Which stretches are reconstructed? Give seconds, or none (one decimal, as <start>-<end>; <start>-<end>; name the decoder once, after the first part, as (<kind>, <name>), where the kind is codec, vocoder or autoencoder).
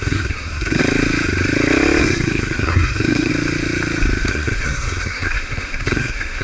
0.0-0.8 (codec, SNAC); 2.0-3.3; 4.3-6.4